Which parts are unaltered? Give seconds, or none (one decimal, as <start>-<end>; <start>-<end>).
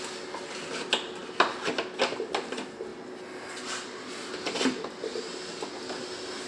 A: 0.0-2.9; 5.2-6.0